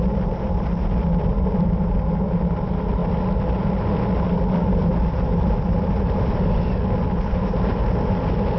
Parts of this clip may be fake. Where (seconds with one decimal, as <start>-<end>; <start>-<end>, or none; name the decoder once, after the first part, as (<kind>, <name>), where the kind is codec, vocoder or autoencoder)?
none